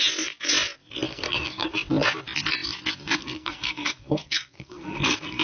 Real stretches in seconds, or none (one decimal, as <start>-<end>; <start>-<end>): 0.0-1.1; 1.7-3.2